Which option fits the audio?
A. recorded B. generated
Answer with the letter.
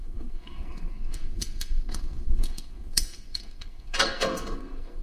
B